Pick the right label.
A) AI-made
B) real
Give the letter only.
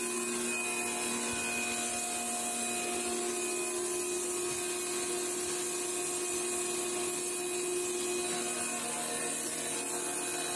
B